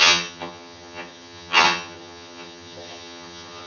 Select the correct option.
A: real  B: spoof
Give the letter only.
B